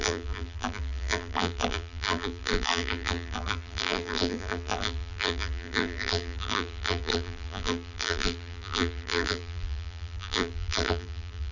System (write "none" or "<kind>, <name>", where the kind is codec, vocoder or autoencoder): vocoder, BigVGAN v2